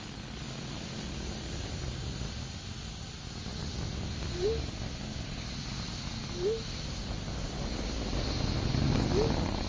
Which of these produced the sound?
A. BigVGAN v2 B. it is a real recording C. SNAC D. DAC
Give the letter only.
B